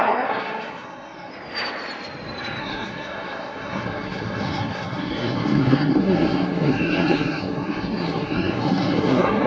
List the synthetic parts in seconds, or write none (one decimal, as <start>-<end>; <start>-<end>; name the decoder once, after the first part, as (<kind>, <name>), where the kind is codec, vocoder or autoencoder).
0.0-1.3 (codec, SNAC); 2.6-9.5